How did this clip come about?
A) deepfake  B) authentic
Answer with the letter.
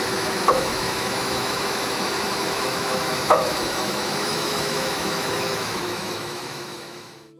A